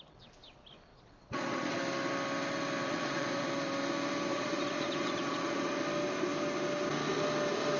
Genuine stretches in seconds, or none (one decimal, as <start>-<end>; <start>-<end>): 0.0-0.9; 1.8-2.8; 3.5-4.3; 5.8-7.8